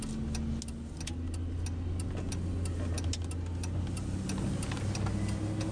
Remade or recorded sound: recorded